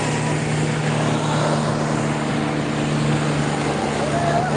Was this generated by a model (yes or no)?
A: no